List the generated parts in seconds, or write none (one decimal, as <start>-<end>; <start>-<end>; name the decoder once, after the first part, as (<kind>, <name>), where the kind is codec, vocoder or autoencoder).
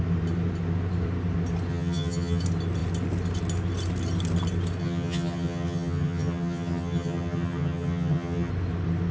1.7-2.4 (vocoder, HiFi-GAN); 4.8-8.5